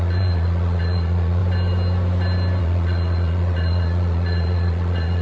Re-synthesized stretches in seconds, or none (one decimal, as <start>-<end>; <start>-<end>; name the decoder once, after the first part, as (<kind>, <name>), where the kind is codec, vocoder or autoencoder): 0.0-1.4 (vocoder, Vocos); 2.6-5.2